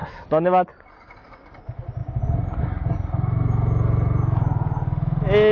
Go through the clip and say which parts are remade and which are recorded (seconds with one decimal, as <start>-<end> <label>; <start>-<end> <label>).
0.0-5.5 recorded